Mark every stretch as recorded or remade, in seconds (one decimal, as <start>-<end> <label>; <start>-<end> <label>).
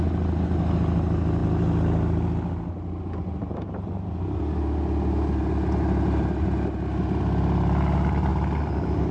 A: 0.0-9.1 recorded